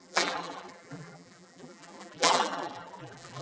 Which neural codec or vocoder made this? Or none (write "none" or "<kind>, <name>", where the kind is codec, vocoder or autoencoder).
vocoder, BigVGAN v2